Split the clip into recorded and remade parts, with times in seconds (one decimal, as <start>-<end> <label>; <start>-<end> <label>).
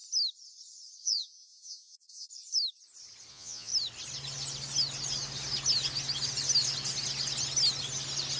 0.0-1.0 recorded; 1.0-2.3 remade; 2.3-3.3 recorded; 3.3-3.7 remade; 3.7-8.4 recorded